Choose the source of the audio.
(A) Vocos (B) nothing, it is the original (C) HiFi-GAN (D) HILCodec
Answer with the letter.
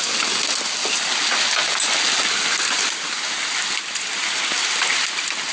B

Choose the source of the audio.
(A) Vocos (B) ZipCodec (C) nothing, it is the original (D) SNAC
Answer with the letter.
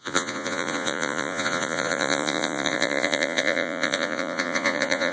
A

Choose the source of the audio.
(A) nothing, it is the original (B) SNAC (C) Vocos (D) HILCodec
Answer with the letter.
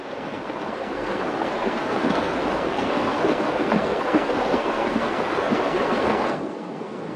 B